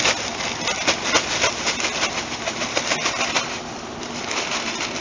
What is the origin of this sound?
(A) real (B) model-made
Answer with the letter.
A